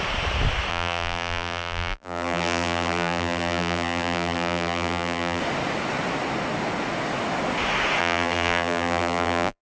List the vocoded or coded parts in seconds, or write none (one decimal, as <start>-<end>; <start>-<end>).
0.7-5.4; 8.0-9.6